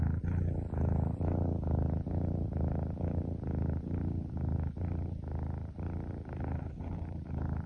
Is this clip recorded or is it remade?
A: recorded